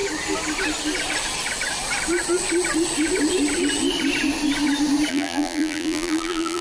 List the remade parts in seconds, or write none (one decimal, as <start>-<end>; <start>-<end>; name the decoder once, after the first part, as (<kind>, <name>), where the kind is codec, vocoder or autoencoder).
5.1-6.6 (vocoder, BigVGAN v2)